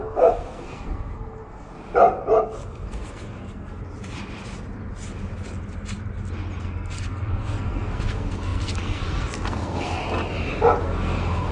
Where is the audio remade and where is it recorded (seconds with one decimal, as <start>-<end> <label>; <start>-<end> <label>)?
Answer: 0.0-1.7 remade; 1.7-2.4 recorded; 2.4-3.8 remade; 3.8-6.6 recorded; 6.6-10.0 remade; 10.0-10.8 recorded; 10.8-11.5 remade